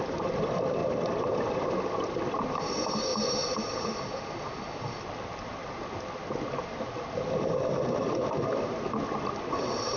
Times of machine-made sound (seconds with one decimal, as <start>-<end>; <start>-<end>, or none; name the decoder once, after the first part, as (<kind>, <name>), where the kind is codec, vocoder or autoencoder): 3.1-4.3 (vocoder, BigVGAN v2)